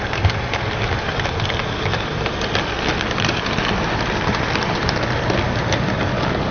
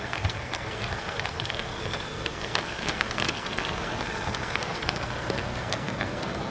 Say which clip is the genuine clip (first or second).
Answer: first